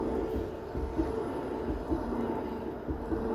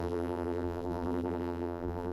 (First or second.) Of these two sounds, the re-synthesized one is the second